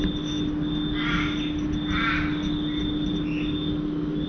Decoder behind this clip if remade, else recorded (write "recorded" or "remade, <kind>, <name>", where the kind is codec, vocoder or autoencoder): recorded